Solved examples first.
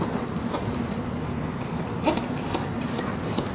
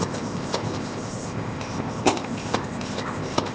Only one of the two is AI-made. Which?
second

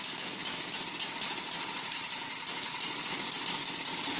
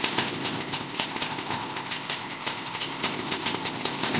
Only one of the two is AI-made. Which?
second